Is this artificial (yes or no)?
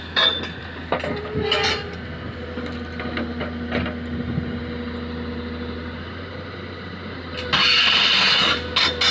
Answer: no